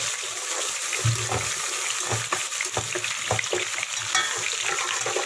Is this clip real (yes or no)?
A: yes